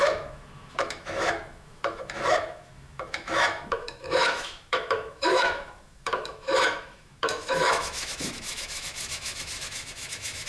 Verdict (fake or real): fake